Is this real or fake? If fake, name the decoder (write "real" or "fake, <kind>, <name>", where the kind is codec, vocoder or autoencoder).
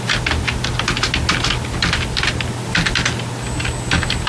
real